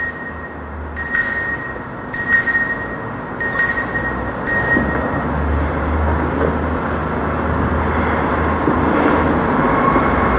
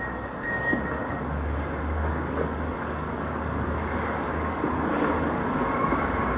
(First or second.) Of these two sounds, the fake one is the second